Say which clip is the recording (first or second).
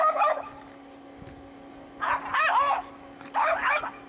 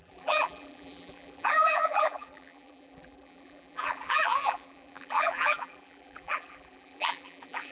first